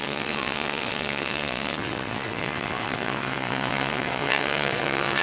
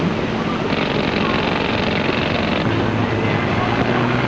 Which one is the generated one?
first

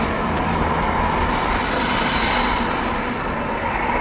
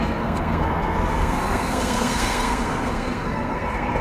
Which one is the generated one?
second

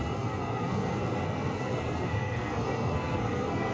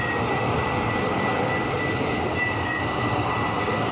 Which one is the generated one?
first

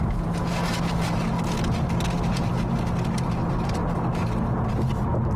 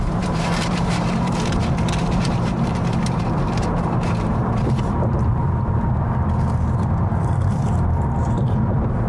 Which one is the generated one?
second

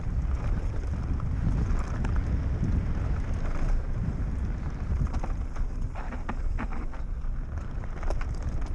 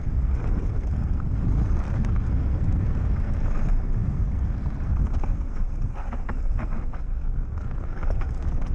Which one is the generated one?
second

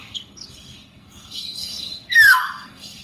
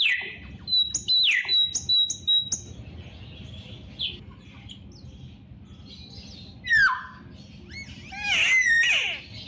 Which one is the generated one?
first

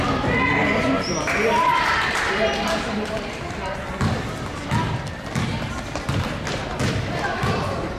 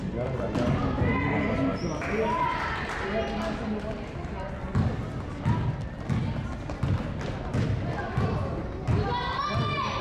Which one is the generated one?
first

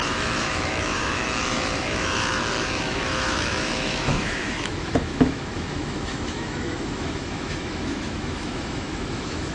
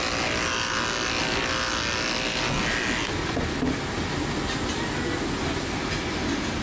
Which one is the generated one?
first